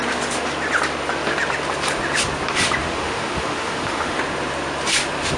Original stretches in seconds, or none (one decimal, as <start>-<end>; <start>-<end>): 0.0-2.8; 4.2-5.4